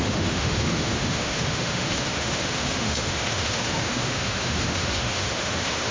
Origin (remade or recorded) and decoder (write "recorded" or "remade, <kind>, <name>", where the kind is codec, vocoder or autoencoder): remade, autoencoder, DAC-VAE